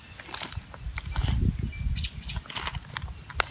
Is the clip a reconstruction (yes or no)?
no